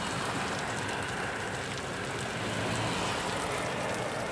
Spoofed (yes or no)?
no